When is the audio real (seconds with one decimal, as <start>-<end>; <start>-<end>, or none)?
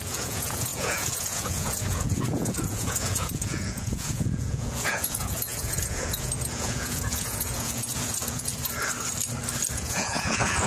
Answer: 8.5-9.7